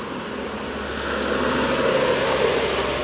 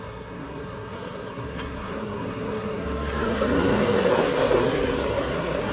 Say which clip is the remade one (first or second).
second